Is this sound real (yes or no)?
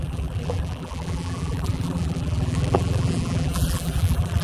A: no